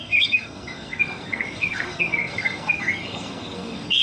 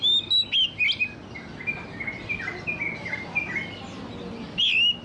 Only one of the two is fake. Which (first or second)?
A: first